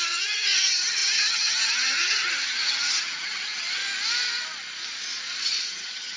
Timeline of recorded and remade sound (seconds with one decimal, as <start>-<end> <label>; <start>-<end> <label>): 0.0-3.8 remade; 3.8-5.6 recorded; 5.6-6.2 remade